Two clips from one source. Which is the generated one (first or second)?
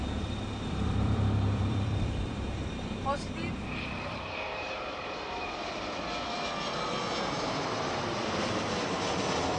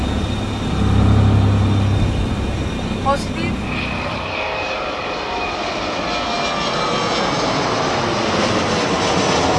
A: first